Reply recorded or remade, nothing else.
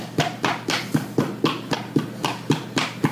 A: recorded